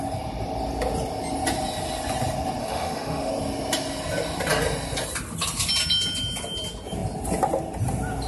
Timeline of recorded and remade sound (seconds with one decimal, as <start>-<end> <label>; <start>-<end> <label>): 0.0-2.6 recorded; 2.6-3.3 remade; 3.3-8.3 recorded